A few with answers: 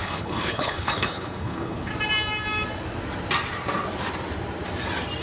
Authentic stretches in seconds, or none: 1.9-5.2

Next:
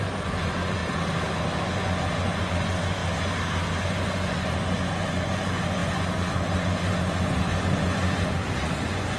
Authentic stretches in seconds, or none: 0.8-1.6; 3.0-3.8

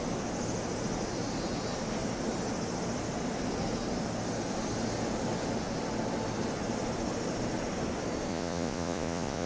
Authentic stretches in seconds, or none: 0.0-8.3

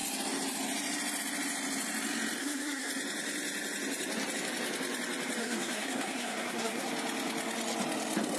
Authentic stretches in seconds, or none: 0.0-2.4; 2.9-5.4; 6.9-8.4